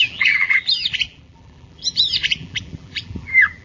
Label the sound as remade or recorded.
remade